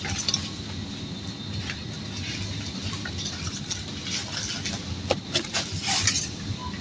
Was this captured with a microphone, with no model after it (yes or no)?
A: yes